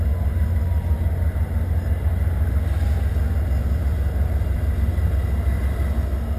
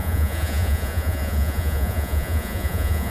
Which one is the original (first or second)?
first